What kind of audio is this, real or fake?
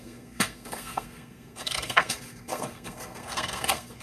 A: fake